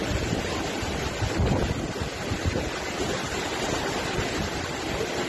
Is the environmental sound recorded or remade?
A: recorded